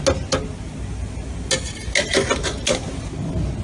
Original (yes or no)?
yes